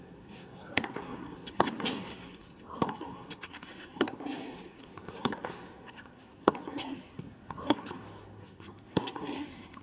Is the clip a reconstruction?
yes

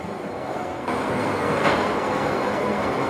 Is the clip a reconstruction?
yes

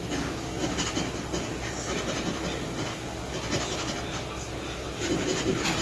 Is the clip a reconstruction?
no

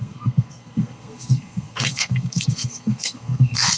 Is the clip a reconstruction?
yes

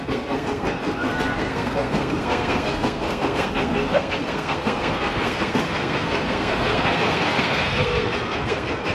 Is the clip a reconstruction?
yes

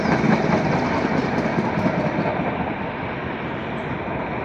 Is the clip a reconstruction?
no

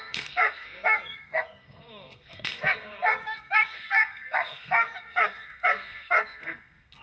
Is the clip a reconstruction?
yes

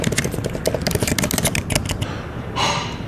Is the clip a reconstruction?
no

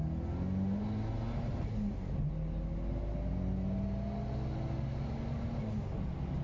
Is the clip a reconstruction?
no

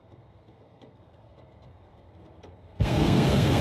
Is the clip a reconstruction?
yes